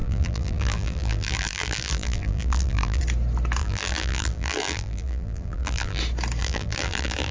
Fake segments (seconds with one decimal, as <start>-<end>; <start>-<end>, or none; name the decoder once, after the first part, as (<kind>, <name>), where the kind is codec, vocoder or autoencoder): 0.0-3.0 (vocoder, BigVGAN v2); 3.6-6.0; 6.4-7.3